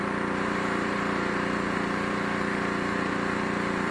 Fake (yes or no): yes